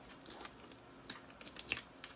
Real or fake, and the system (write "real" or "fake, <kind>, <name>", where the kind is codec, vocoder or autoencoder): real